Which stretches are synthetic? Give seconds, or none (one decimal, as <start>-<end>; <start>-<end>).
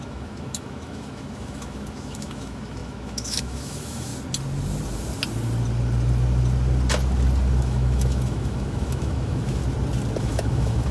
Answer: 0.0-4.1; 7.6-9.6; 10.2-10.9